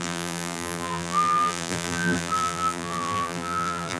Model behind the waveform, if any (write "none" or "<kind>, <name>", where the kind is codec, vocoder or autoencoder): vocoder, BigVGAN v2